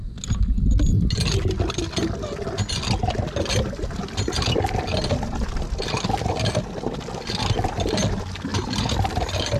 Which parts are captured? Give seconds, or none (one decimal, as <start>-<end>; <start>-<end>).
0.0-8.5